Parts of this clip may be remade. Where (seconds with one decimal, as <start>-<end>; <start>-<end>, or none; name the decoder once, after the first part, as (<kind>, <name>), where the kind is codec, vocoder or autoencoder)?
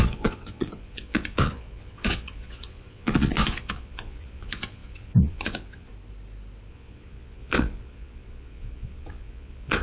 0.0-5.9 (vocoder, Vocos); 6.7-9.8